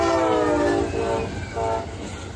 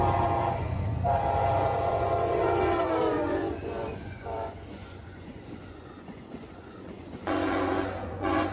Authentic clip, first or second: first